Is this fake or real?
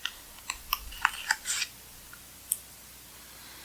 real